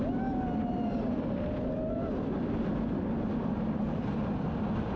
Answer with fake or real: real